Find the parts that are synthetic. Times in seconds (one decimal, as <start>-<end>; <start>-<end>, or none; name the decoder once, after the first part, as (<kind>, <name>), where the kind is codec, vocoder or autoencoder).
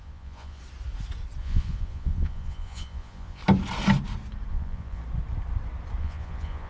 0.0-0.6 (vocoder, Vocos); 1.4-3.4; 4.5-5.0; 6.0-6.7